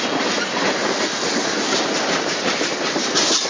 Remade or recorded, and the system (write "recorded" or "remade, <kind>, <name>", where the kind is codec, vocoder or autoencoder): recorded